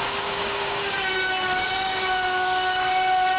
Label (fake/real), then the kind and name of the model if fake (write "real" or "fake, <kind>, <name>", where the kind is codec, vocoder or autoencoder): fake, codec, DAC